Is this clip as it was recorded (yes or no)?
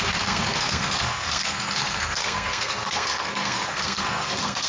no